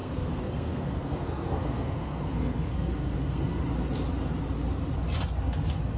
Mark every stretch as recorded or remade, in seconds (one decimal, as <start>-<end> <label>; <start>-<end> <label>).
0.0-3.6 remade; 3.6-6.0 recorded